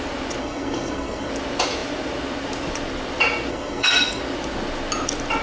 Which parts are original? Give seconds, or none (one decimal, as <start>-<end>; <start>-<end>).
0.0-0.4; 1.3-3.5; 4.2-5.4